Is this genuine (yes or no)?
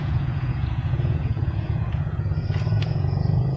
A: no